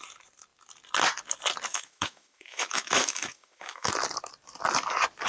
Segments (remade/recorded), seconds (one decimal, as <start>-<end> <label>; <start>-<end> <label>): 0.0-1.7 recorded; 1.7-3.9 remade; 3.9-5.3 recorded